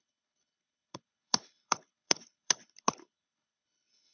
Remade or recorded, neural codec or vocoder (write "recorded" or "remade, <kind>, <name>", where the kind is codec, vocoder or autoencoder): remade, codec, HILCodec